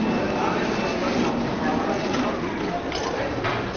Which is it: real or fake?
real